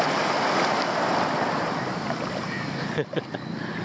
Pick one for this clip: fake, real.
real